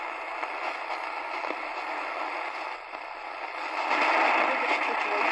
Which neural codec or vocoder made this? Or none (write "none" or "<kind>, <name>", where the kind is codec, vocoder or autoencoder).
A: none